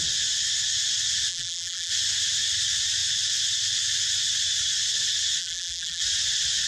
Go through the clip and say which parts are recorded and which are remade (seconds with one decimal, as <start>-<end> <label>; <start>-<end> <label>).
0.0-1.3 recorded; 1.3-1.9 remade; 1.9-5.4 recorded; 5.4-6.0 remade; 6.0-6.7 recorded